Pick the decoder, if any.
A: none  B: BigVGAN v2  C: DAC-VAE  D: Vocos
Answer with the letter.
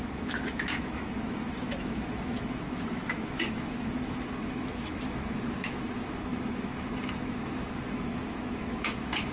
C